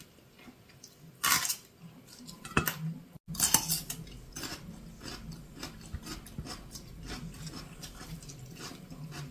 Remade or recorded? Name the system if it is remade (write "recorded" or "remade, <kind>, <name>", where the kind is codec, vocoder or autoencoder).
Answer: recorded